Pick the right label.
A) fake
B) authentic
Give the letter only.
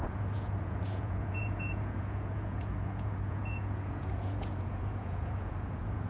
A